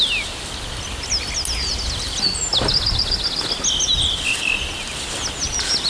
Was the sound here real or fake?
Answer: real